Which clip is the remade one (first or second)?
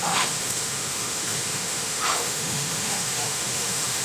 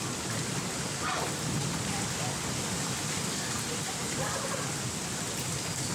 first